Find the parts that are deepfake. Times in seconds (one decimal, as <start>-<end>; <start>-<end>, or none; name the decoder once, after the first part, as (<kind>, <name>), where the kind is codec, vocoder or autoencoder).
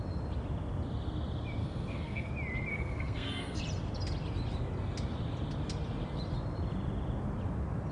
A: 1.6-2.3 (codec, SNAC); 2.7-3.6